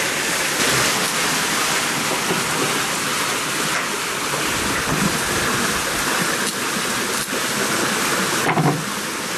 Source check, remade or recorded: recorded